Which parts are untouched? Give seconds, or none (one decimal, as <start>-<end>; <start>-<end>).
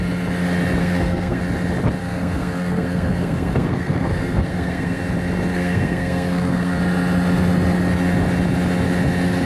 0.0-0.8; 1.4-2.0; 5.0-5.5; 6.8-9.5